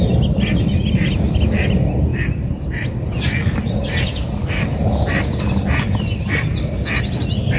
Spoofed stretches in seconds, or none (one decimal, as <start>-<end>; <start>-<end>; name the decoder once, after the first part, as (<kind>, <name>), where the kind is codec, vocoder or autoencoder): none